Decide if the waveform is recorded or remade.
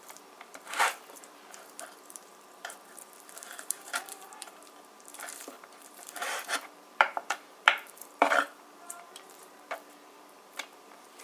remade